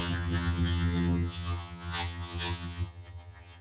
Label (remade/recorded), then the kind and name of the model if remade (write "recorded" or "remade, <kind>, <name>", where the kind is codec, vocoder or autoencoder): remade, vocoder, HiFi-GAN